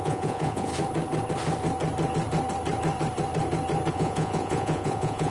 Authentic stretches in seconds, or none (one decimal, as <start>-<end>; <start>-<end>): 0.7-3.9